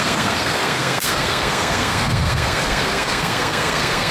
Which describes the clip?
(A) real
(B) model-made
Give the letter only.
B